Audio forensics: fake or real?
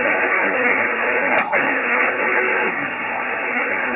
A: fake